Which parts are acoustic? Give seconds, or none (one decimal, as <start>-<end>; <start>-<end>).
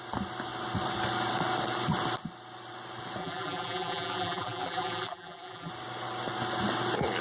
0.0-3.2; 5.7-7.2